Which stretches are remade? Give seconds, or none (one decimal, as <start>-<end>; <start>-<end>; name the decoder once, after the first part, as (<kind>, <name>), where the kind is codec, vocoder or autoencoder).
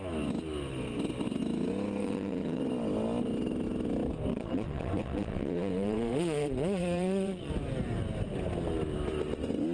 2.0-2.6 (vocoder, WaveNeXt); 4.3-7.5